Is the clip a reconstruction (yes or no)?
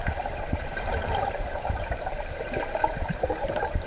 yes